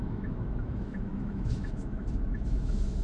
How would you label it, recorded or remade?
remade